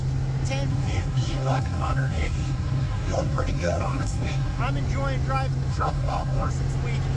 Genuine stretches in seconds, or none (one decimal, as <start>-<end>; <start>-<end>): 0.0-0.7; 4.6-5.7; 6.5-7.2